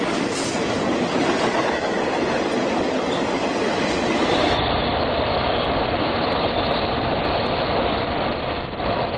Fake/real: real